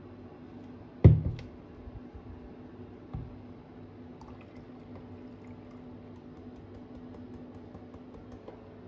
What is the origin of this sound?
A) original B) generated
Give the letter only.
A